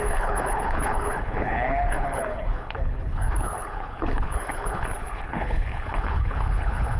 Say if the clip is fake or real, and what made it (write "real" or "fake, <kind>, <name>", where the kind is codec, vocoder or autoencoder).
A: fake, codec, HILCodec